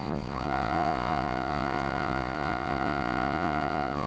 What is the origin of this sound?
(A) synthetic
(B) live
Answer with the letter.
A